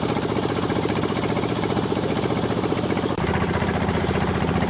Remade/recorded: remade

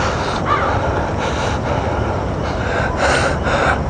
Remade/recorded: recorded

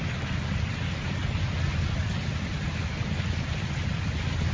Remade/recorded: recorded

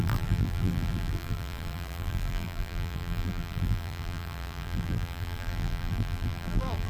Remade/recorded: remade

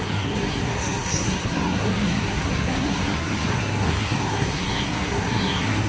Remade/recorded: remade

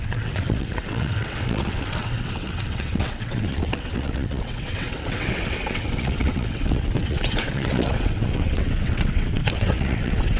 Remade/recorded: remade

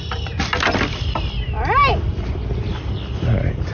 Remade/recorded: recorded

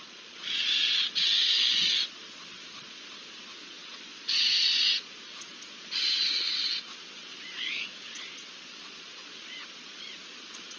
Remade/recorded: remade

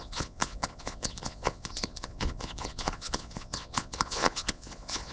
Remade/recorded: remade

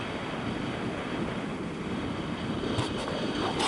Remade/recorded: recorded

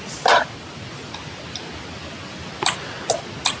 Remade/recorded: recorded